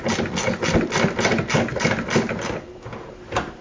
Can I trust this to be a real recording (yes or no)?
yes